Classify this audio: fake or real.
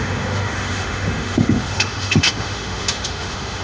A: fake